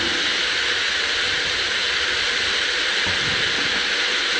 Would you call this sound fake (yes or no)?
no